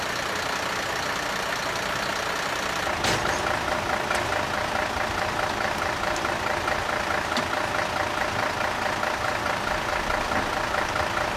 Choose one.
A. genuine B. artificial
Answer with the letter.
A